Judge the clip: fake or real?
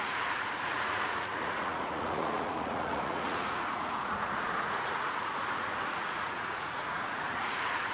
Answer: fake